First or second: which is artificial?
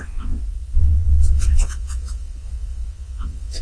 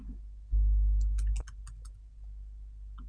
first